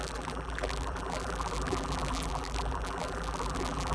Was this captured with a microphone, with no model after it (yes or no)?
no